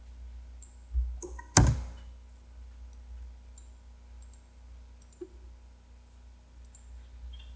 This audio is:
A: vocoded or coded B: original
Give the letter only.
B